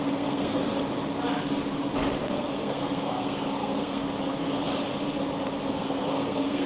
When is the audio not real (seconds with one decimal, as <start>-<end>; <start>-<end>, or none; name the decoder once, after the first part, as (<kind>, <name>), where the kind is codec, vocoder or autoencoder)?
0.0-0.7 (codec, SNAC); 2.2-4.0; 5.7-6.7